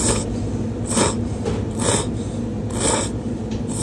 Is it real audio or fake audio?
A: real